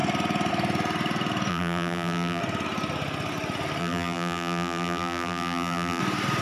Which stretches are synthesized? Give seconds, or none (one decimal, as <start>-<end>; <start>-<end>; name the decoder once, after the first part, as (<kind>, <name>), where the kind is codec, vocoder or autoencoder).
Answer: 1.5-2.4 (vocoder, BigVGAN v2); 3.8-6.0